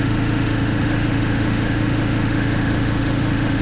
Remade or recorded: remade